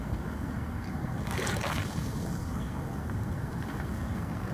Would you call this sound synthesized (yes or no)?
yes